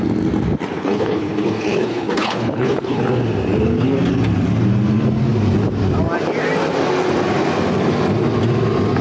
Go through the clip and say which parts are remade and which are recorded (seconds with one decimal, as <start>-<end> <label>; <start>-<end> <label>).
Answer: 0.0-0.7 recorded; 0.7-3.0 remade; 3.0-9.0 recorded